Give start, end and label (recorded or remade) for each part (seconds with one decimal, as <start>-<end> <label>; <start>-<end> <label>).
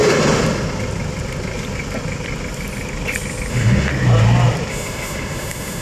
0.0-3.5 recorded; 3.5-3.9 remade; 3.9-4.7 recorded; 4.7-5.8 remade